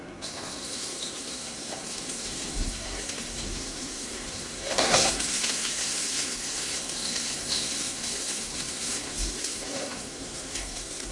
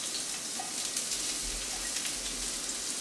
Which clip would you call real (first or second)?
second